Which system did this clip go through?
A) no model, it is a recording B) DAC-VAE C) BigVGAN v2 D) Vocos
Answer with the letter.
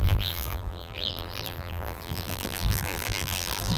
C